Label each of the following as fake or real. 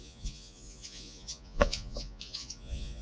fake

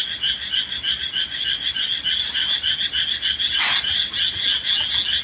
real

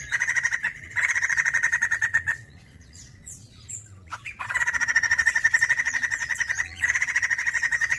fake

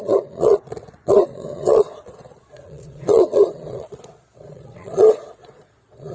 fake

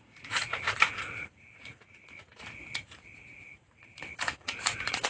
fake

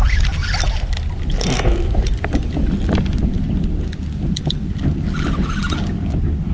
real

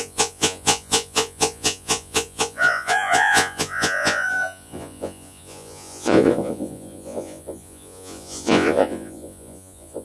fake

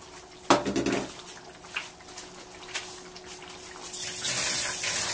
real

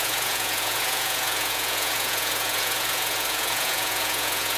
fake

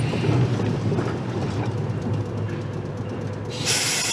real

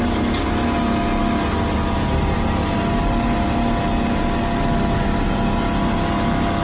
real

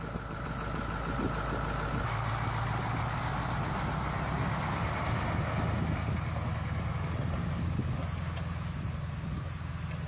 real